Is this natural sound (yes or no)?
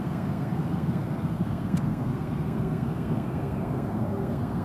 no